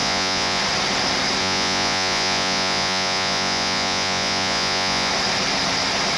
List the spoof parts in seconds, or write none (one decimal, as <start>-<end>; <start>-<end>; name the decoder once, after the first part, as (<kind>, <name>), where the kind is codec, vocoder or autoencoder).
0.0-0.6 (vocoder, Vocos); 1.4-5.1